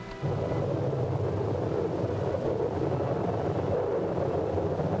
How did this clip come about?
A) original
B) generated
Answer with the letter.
A